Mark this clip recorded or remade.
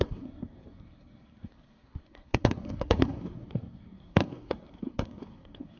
remade